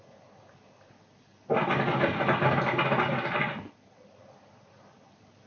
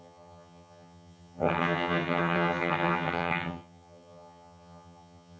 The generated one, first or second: second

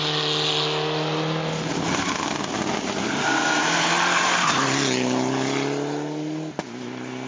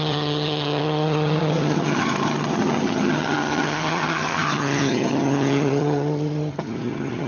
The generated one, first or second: second